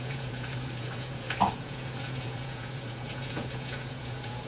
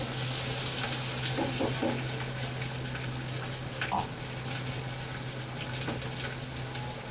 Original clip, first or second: second